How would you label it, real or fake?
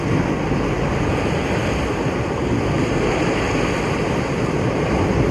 real